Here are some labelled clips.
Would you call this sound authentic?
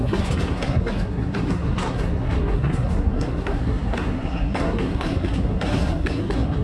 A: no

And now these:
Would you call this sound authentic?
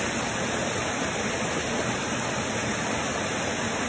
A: yes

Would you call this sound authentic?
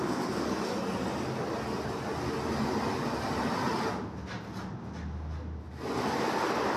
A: yes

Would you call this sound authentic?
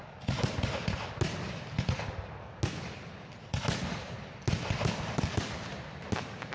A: yes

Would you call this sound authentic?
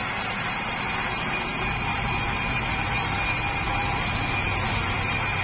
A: yes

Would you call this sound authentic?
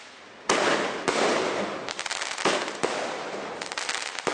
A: yes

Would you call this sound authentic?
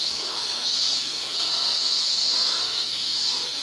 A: no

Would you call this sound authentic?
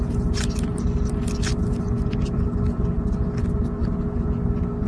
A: yes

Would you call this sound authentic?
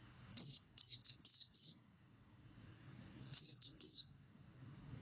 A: no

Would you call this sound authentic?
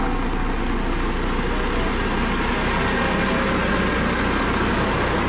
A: yes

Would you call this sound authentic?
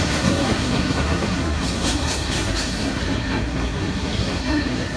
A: no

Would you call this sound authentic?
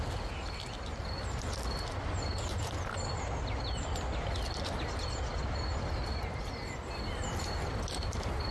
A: yes